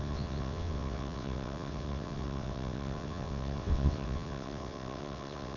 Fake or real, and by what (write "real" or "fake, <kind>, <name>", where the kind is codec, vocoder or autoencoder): fake, vocoder, WaveNeXt